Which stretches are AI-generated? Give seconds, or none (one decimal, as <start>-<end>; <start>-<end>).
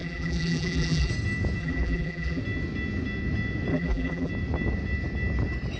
0.0-1.1; 1.6-2.4; 3.7-4.3